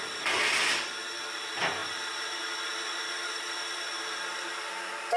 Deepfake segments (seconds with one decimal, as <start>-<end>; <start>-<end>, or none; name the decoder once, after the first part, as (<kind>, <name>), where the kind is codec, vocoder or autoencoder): none